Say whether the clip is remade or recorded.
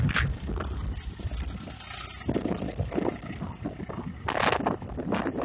recorded